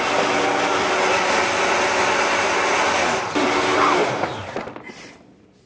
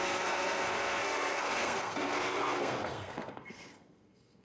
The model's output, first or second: second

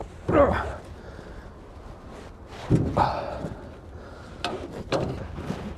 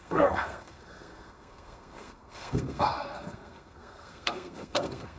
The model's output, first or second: second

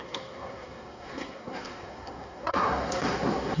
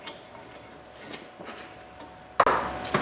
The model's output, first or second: first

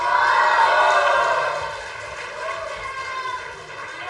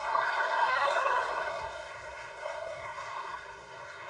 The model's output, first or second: second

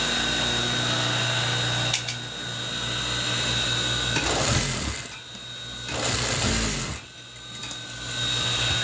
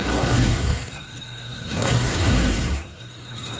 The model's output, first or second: second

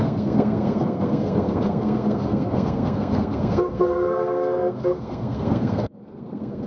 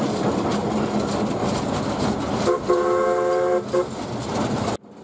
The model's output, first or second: first